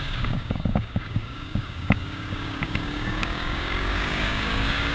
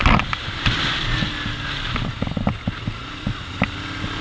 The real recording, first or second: second